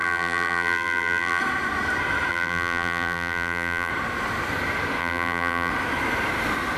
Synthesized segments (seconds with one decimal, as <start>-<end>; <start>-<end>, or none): 0.0-1.4; 2.3-3.9; 5.0-5.7